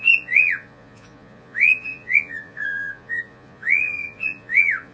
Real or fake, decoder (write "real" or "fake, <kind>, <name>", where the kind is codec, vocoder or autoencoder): fake, vocoder, Vocos